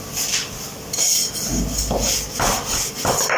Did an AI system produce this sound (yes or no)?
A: yes